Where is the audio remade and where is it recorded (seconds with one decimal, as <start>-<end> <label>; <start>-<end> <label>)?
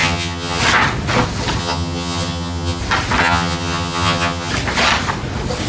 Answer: 0.0-0.6 remade; 0.6-1.6 recorded; 1.6-2.8 remade; 2.8-3.2 recorded; 3.2-4.5 remade; 4.5-5.7 recorded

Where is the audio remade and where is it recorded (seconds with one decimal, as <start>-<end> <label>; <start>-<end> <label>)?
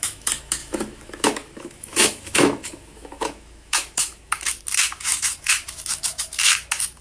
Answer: 0.0-7.0 remade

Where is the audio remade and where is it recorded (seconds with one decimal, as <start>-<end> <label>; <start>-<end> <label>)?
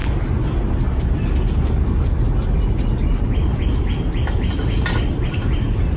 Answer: 0.0-6.0 recorded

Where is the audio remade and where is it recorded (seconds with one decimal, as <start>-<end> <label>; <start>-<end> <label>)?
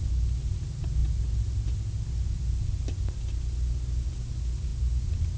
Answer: 0.0-5.4 recorded